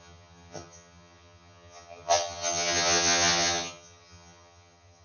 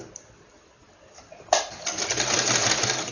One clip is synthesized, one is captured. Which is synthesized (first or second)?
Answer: first